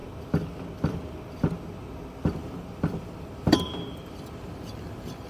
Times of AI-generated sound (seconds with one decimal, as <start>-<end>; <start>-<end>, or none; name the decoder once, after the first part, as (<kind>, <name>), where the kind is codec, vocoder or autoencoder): 2.4-5.3 (vocoder, BigVGAN v2)